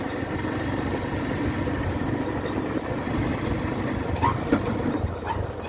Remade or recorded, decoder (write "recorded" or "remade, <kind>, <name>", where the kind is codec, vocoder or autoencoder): recorded